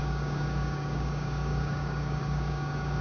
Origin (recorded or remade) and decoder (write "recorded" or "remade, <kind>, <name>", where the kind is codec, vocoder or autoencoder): remade, codec, DAC